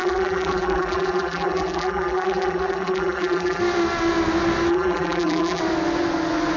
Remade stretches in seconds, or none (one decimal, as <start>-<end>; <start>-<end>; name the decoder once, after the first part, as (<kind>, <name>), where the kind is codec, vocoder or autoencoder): 0.0-3.6 (vocoder, BigVGAN v2); 4.7-5.6